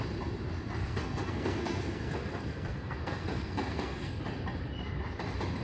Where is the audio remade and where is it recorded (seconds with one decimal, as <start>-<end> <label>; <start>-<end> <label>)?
0.0-0.8 recorded; 0.8-4.2 remade; 4.2-5.6 recorded